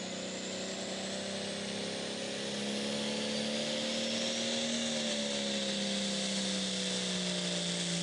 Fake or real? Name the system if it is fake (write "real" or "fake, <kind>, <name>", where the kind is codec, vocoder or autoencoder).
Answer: real